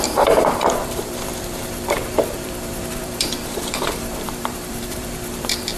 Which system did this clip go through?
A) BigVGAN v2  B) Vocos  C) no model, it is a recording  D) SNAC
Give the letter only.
A